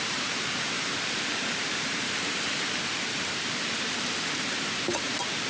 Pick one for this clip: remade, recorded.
remade